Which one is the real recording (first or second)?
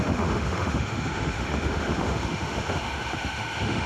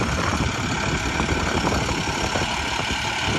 second